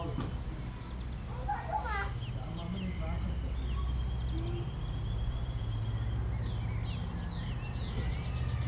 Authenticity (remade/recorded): recorded